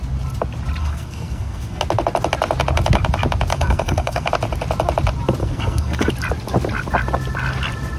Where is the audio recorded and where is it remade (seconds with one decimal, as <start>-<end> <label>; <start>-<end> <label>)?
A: 0.0-0.8 recorded; 0.8-1.8 remade; 1.8-3.5 recorded; 3.5-4.3 remade; 4.3-5.4 recorded; 5.4-6.1 remade; 6.1-8.0 recorded